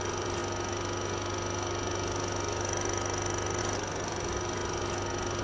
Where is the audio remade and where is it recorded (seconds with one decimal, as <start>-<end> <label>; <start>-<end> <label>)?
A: 0.0-0.4 remade; 0.4-3.6 recorded; 3.6-4.6 remade; 4.6-5.4 recorded